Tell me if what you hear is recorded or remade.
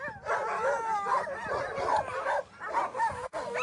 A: recorded